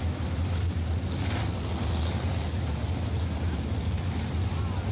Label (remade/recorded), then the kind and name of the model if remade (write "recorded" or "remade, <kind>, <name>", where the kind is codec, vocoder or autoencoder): recorded